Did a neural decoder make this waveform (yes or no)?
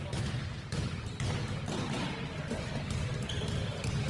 no